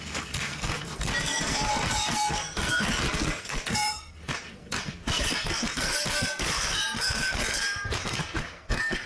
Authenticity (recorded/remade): remade